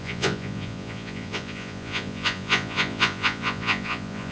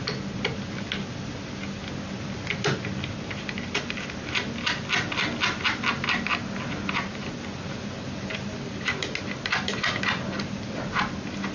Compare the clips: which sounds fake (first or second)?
first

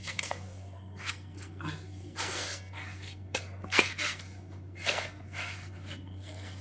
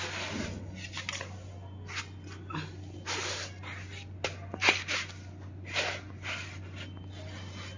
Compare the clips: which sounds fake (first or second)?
first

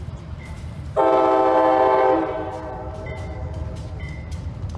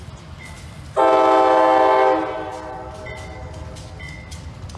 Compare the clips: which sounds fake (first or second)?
first